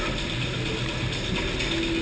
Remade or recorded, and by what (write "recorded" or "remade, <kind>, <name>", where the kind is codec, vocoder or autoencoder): recorded